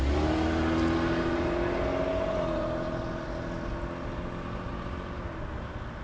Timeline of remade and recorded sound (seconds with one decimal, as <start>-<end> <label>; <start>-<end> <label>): 0.0-6.0 recorded